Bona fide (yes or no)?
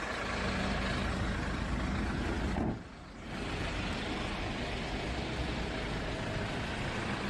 yes